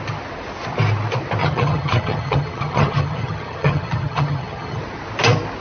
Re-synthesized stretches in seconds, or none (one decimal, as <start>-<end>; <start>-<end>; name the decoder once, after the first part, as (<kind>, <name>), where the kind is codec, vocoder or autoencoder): 1.4-4.8 (vocoder, HiFi-GAN)